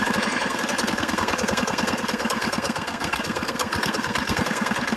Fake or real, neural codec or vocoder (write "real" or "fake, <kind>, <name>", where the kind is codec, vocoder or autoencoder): fake, codec, SNAC